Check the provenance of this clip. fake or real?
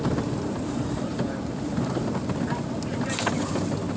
fake